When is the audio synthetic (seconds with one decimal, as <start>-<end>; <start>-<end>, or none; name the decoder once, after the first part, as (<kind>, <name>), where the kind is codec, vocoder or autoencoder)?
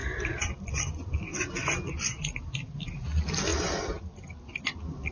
0.0-0.6 (vocoder, BigVGAN v2)